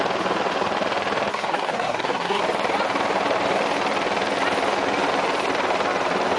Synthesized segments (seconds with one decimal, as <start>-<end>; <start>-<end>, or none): 1.3-2.4